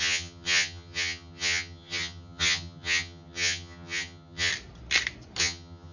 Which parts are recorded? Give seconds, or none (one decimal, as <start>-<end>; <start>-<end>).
4.5-5.4